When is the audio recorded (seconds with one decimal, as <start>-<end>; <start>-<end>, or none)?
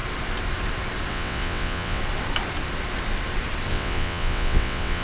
0.0-1.1; 2.0-3.7